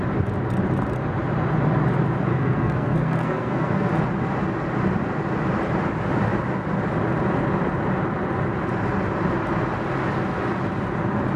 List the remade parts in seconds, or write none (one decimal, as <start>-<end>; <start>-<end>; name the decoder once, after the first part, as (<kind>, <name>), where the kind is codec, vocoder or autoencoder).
2.3-3.9 (codec, SNAC)